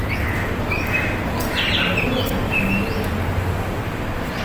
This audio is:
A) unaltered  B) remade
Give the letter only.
B